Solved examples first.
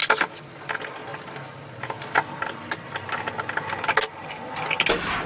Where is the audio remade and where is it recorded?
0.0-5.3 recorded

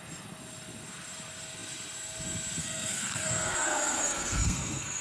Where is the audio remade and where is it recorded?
0.0-2.6 recorded; 2.6-5.0 remade